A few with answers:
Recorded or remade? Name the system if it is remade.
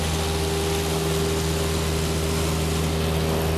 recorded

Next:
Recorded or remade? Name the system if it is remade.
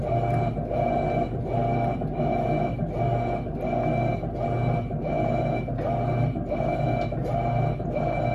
recorded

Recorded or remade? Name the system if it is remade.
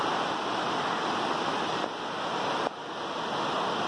recorded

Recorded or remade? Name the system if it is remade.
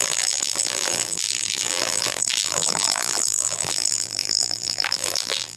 remade, vocoder, BigVGAN v2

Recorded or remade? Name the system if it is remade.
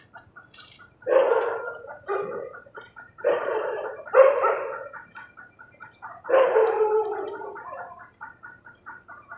remade, vocoder, BigVGAN v2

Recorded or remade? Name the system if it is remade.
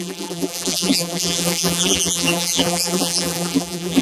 remade, vocoder, BigVGAN v2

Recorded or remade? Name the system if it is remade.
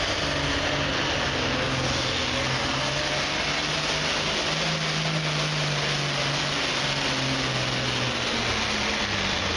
recorded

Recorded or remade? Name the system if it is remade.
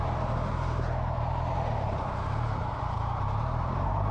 remade, vocoder, BigVGAN v2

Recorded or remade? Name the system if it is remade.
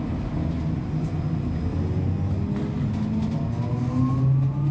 recorded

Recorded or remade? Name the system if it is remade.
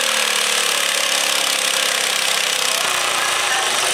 recorded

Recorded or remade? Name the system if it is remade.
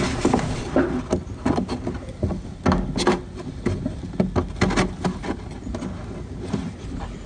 recorded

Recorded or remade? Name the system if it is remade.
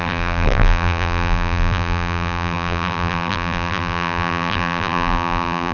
remade, vocoder, BigVGAN v2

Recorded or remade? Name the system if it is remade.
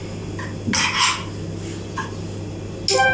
recorded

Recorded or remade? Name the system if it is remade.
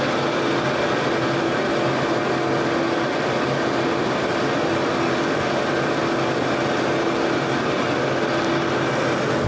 recorded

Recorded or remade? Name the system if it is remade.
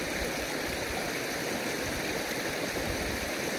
recorded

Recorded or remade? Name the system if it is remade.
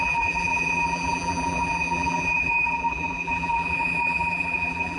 remade, vocoder, BigVGAN v2